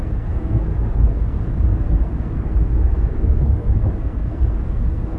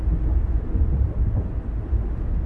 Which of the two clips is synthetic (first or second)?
first